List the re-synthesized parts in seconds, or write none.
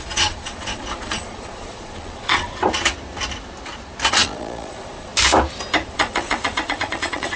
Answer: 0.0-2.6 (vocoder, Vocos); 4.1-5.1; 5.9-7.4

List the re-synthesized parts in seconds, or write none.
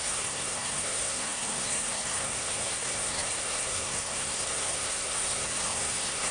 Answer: 0.0-6.3 (codec, SNAC)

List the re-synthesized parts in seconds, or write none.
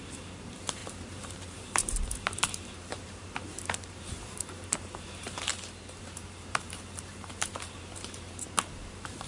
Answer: 0.0-5.5 (vocoder, BigVGAN v2); 6.0-9.3